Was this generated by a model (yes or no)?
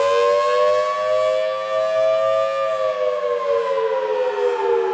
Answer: no